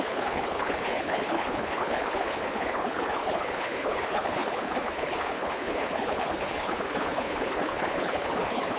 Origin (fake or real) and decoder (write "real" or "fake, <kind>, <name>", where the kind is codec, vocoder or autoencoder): fake, codec, HILCodec